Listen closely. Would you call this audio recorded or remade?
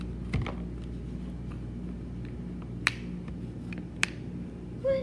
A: recorded